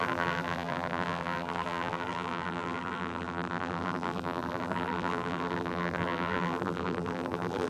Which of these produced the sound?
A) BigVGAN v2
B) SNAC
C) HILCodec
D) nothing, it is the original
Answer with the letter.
A